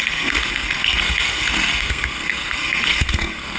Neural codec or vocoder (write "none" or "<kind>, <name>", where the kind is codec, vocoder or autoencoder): codec, SNAC